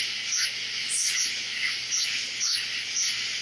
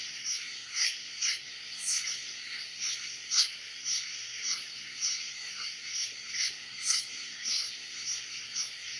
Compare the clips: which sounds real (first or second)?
first